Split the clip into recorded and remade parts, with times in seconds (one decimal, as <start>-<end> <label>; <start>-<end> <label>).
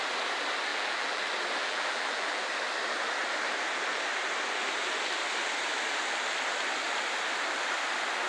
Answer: 0.0-0.7 recorded; 0.7-1.2 remade; 1.2-1.6 recorded; 1.6-2.4 remade; 2.4-8.3 recorded